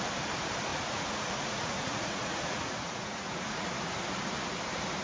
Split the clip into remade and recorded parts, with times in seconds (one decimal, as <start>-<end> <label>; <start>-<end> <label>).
0.0-0.7 recorded; 0.7-3.7 remade; 3.7-5.0 recorded